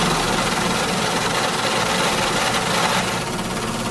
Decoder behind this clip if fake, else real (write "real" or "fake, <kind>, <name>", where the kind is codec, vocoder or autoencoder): real